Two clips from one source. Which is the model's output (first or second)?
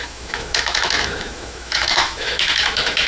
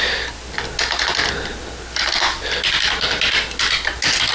first